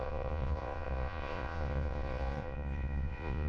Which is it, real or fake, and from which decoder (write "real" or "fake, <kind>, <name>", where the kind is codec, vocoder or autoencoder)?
fake, vocoder, Vocos